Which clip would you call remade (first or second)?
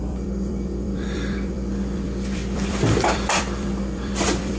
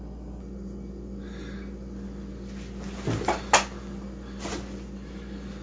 first